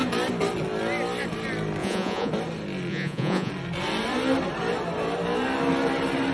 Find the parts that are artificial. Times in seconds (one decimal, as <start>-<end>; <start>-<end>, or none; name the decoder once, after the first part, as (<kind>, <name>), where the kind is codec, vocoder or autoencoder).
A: 1.8-2.3 (vocoder, Vocos); 2.9-3.5